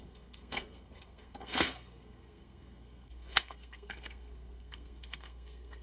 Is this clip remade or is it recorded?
remade